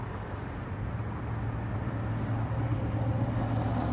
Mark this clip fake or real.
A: real